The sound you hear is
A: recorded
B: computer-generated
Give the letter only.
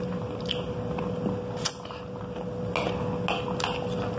A